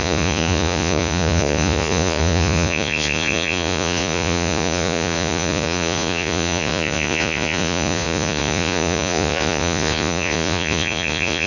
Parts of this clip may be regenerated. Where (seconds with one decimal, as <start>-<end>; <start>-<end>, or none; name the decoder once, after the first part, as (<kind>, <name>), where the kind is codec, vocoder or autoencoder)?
0.0-11.5 (vocoder, Vocos)